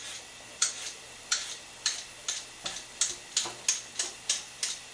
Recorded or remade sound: recorded